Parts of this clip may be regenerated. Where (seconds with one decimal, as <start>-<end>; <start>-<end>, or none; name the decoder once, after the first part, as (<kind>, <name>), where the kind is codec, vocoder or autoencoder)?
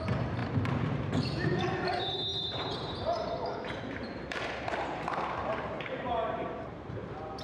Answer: 0.0-7.4 (vocoder, BigVGAN v2)